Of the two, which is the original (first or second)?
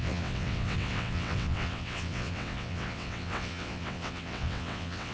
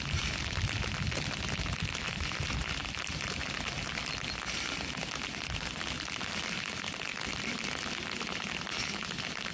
second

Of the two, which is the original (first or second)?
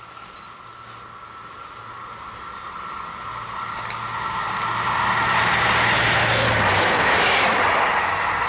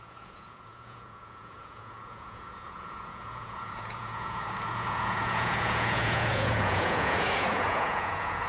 first